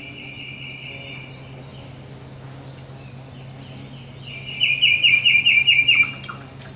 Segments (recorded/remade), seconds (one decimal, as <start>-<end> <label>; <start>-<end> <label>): 0.0-6.8 recorded